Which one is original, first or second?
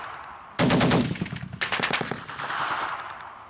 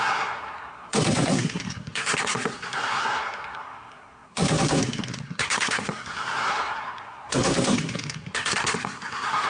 first